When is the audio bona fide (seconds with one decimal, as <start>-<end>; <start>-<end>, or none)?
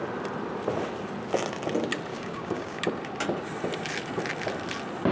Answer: 0.0-2.1; 2.8-5.1